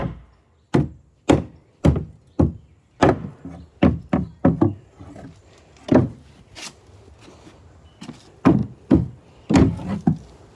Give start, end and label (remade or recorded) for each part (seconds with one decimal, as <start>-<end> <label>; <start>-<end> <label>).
0.0-10.5 recorded